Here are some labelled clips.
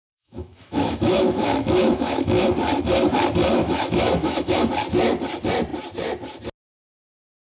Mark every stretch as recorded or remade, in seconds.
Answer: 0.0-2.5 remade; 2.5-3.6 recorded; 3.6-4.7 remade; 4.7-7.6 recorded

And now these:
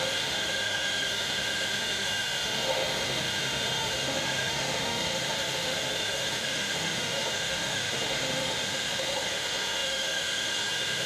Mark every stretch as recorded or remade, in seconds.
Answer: 0.0-11.1 remade